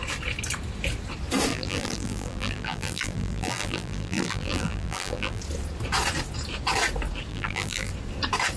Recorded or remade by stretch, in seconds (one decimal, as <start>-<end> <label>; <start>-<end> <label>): 0.0-1.5 recorded; 1.5-5.4 remade; 5.4-7.3 recorded; 7.3-7.9 remade; 7.9-8.6 recorded